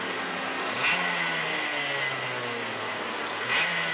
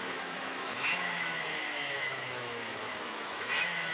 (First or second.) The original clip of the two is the first